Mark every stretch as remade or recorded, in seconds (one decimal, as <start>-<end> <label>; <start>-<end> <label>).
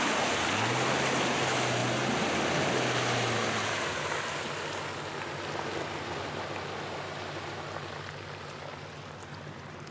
0.0-9.9 recorded